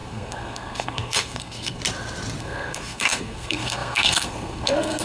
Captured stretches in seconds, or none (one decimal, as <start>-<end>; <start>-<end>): 1.8-2.4